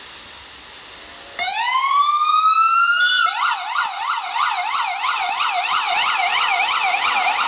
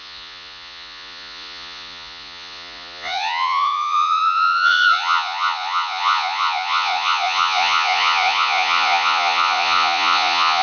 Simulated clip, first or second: second